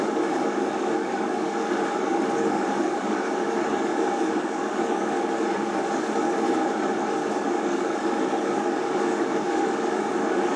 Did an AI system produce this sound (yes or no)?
yes